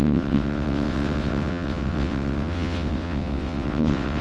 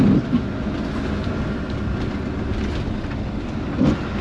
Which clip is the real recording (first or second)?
second